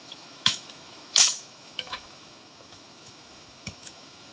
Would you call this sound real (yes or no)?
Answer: no